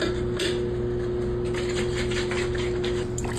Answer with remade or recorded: recorded